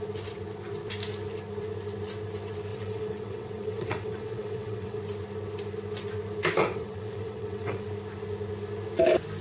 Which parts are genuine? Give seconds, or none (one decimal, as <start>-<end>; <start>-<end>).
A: 0.0-2.7; 5.0-6.6; 7.9-9.4